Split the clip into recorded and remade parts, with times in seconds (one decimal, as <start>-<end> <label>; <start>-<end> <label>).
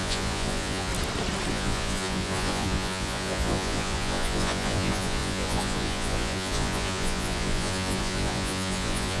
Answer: 0.0-0.9 remade; 0.9-1.5 recorded; 1.5-9.2 remade